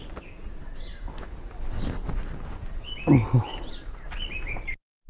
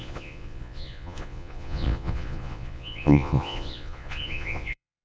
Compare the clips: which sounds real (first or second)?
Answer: first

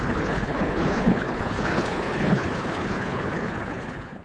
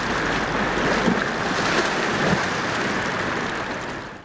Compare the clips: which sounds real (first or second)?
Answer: second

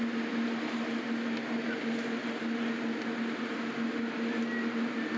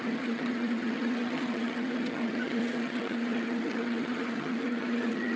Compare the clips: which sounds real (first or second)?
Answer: first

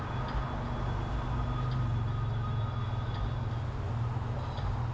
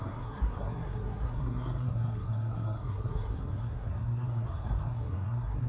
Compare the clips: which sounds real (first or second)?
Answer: first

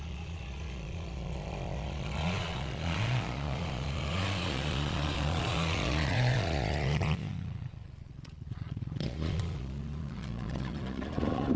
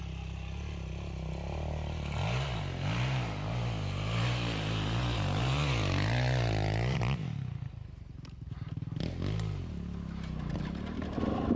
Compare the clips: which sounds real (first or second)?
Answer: second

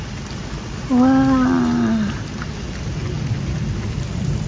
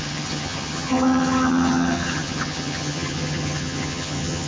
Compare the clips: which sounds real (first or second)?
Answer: first